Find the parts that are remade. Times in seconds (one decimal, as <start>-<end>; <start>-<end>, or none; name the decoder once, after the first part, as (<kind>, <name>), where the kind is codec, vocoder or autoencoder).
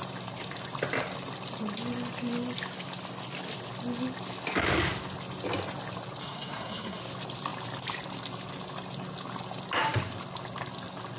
6.2-7.0 (codec, SNAC)